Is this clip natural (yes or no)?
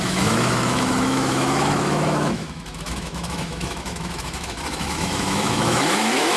no